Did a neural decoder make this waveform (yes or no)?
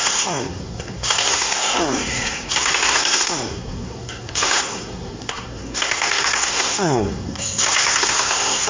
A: yes